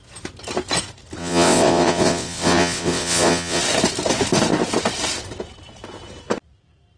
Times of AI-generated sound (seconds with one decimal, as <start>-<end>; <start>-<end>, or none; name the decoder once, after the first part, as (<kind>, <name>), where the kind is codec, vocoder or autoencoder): 1.2-3.6 (vocoder, WaveNeXt)